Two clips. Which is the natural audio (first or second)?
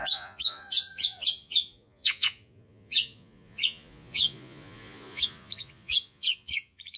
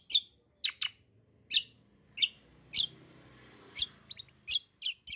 second